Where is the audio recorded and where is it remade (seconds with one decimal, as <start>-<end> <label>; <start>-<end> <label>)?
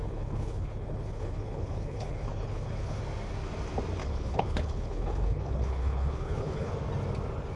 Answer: 0.0-3.0 remade; 3.0-4.0 recorded; 4.0-6.7 remade; 6.7-7.6 recorded